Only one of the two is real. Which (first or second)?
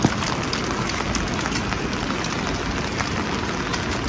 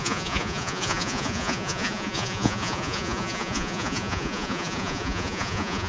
first